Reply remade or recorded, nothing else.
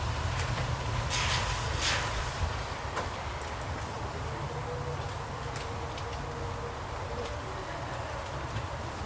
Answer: recorded